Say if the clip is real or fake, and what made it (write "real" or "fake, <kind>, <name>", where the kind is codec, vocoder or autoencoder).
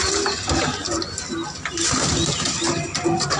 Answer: real